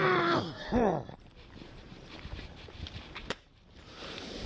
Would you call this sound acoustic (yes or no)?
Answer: no